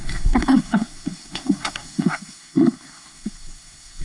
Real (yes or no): no